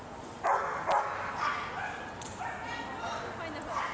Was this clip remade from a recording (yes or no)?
no